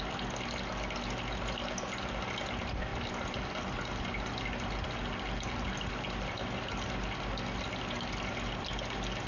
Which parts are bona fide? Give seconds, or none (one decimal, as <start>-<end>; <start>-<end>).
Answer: 0.0-9.3